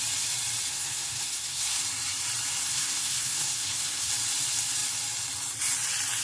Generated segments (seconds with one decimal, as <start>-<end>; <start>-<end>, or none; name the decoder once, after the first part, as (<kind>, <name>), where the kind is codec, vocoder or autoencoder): 0.7-1.8 (codec, SNAC); 2.6-4.1